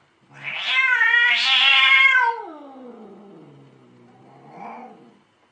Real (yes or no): yes